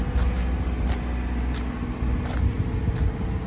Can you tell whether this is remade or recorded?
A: recorded